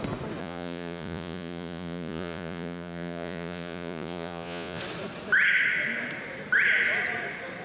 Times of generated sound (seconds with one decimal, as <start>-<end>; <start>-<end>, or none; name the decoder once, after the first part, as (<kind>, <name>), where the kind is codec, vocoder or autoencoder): 0.4-4.8 (vocoder, Vocos)